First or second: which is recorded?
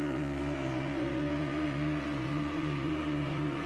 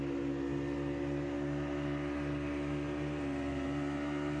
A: second